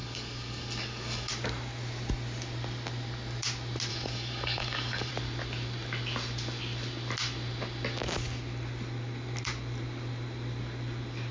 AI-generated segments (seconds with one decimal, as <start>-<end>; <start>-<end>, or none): 0.0-1.3; 3.9-5.1